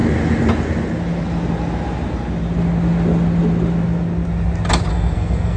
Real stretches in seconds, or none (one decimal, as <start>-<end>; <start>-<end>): 0.0-4.9